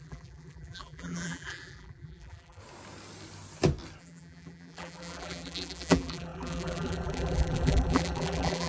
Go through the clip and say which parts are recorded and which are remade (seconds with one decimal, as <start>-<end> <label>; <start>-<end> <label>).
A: 0.0-2.6 remade; 2.6-4.0 recorded; 4.0-8.7 remade